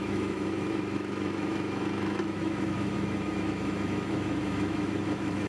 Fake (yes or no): yes